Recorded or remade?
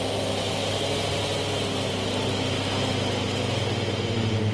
recorded